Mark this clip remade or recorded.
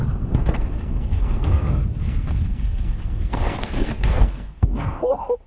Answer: remade